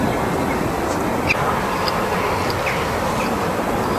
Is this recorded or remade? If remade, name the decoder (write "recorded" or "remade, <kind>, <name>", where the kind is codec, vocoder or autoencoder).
recorded